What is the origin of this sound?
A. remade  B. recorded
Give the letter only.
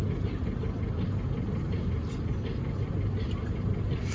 B